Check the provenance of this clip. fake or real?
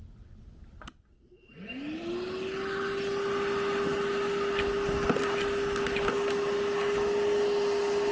real